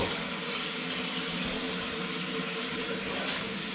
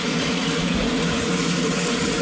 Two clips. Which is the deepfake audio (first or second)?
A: second